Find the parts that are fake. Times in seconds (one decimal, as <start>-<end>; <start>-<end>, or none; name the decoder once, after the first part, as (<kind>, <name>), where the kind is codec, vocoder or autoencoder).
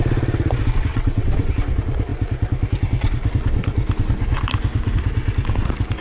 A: 0.9-1.5 (vocoder, WaveNeXt)